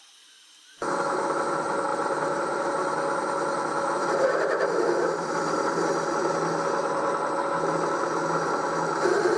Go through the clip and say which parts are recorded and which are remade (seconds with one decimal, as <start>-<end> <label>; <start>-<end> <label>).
0.0-1.9 recorded; 1.9-2.7 remade; 2.7-4.0 recorded; 4.0-6.2 remade; 6.2-9.4 recorded

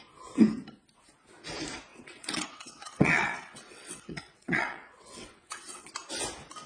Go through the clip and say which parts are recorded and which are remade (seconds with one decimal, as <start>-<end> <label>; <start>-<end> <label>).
0.0-1.9 recorded; 1.9-5.9 remade; 5.9-6.7 recorded

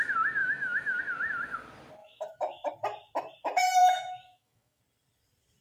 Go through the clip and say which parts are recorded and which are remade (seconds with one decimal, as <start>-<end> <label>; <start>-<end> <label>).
0.0-0.4 recorded; 0.4-1.0 remade; 1.0-2.0 recorded; 2.0-2.7 remade; 2.7-3.8 recorded; 3.8-4.8 remade; 4.8-5.6 recorded

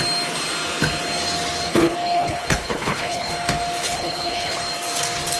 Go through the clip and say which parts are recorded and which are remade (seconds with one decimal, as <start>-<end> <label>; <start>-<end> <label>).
0.0-1.7 recorded; 1.7-3.3 remade; 3.3-3.8 recorded; 3.8-4.6 remade; 4.6-5.4 recorded

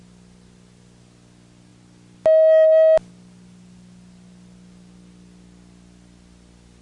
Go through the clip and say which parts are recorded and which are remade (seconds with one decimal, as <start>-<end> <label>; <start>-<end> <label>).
0.0-6.8 recorded

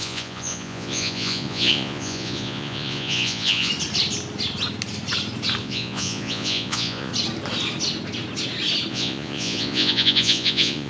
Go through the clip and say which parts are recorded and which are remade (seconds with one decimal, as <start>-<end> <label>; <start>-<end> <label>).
0.0-3.7 remade; 3.7-5.6 recorded; 5.6-7.1 remade; 7.1-8.9 recorded; 8.9-10.9 remade

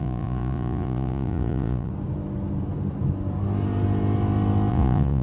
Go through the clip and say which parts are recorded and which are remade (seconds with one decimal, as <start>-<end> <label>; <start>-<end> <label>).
0.0-1.9 remade; 1.9-4.7 recorded; 4.7-5.2 remade